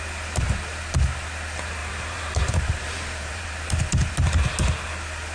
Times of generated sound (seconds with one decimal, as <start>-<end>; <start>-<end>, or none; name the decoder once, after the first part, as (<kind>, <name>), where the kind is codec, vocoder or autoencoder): 1.8-3.5 (vocoder, BigVGAN v2)